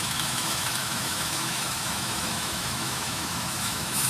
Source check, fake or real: fake